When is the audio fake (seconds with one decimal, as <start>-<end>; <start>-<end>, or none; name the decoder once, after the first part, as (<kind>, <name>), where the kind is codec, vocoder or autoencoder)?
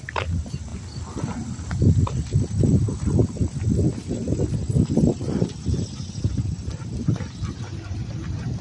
none